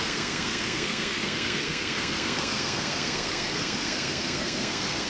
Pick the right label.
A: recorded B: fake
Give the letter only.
B